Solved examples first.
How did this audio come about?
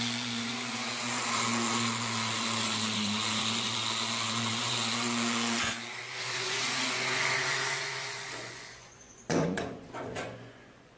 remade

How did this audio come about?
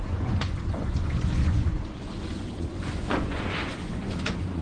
remade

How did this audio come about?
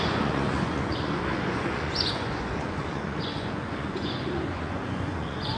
remade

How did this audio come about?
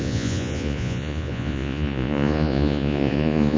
remade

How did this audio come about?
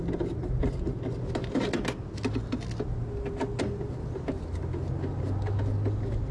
recorded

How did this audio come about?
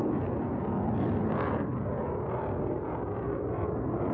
recorded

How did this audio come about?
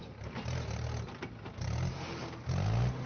recorded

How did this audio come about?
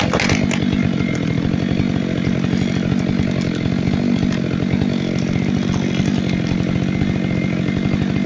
recorded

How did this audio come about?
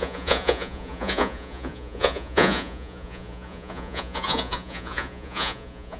remade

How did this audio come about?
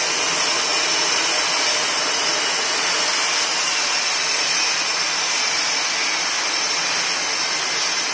recorded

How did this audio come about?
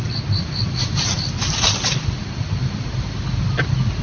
recorded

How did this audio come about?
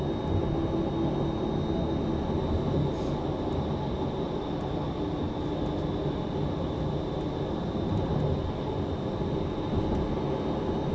recorded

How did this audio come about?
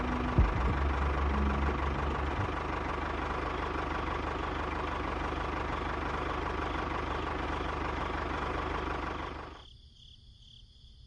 recorded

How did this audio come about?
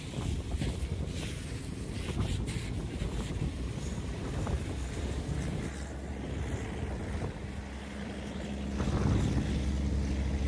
recorded